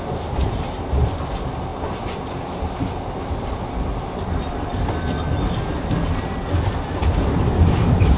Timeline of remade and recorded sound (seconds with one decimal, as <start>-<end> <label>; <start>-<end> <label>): 0.0-8.2 recorded